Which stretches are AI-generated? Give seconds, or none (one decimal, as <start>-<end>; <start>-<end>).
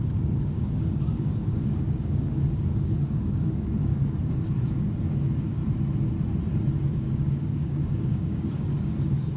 0.0-5.6; 6.9-9.4